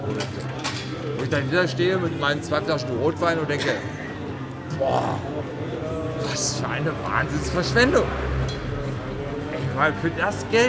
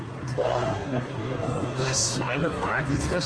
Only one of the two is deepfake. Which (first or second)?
second